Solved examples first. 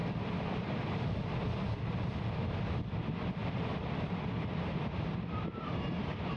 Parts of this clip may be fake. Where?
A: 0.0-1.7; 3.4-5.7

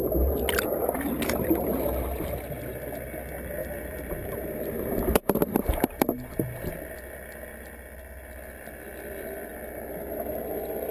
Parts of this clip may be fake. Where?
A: 3.6-6.7

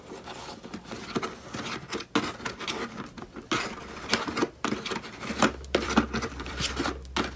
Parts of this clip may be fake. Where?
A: 4.4-6.7

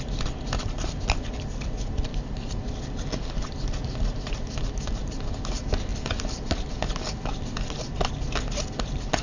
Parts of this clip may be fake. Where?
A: 5.9-6.9

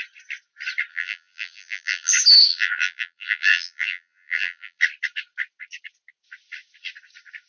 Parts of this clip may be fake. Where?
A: 0.9-2.1; 2.5-4.8

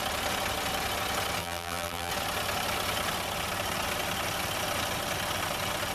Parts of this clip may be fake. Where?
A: 1.4-2.1

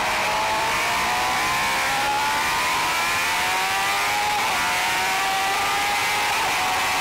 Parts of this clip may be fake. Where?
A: 0.0-3.9; 4.5-6.0